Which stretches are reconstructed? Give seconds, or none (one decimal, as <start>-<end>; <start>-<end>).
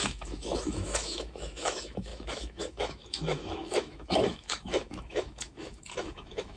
0.0-6.6